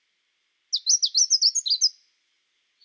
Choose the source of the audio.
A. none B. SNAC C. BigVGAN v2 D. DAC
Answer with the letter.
A